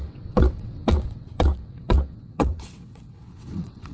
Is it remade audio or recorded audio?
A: remade